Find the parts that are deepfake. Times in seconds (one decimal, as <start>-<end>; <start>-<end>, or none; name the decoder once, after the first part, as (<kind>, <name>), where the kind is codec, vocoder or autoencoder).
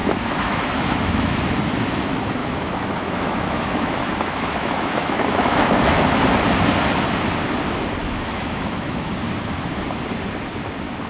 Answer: 0.0-1.4 (autoencoder, DAC-VAE); 2.4-6.0; 8.0-9.1